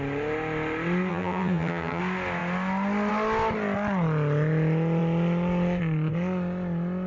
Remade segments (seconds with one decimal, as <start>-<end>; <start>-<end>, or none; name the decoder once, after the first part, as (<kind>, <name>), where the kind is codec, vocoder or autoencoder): 1.1-2.0 (vocoder, HiFi-GAN)